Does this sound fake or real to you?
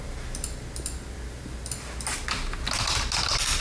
real